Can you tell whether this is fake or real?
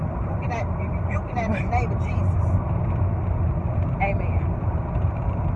real